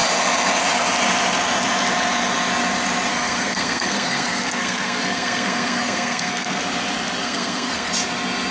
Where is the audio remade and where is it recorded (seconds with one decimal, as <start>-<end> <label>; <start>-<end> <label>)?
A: 0.0-3.1 recorded; 3.1-6.6 remade; 6.6-7.2 recorded; 7.2-7.9 remade; 7.9-8.5 recorded

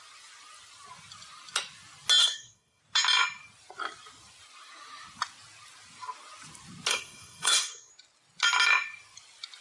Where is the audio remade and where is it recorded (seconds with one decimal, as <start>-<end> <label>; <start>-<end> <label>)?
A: 0.0-2.2 recorded; 2.2-2.8 remade; 2.8-6.9 recorded; 6.9-7.9 remade; 7.9-9.6 recorded